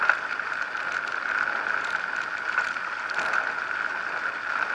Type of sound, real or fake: real